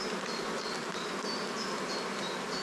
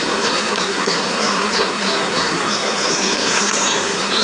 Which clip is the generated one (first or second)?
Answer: second